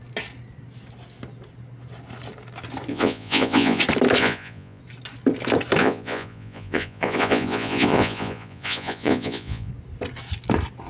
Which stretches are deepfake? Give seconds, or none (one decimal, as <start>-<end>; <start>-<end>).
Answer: 2.9-3.8; 4.2-4.8; 5.8-9.7